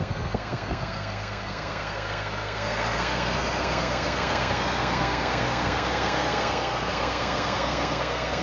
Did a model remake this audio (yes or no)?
yes